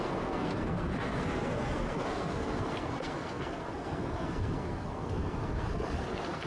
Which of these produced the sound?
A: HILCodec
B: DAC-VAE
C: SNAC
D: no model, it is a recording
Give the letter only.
C